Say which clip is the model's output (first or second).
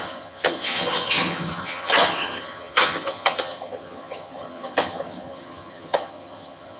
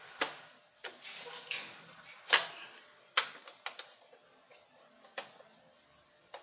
first